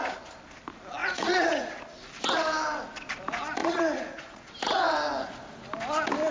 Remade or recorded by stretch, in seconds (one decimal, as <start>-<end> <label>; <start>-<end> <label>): 0.0-1.0 recorded; 1.0-1.8 remade; 1.8-3.6 recorded; 3.6-4.5 remade; 4.5-6.3 recorded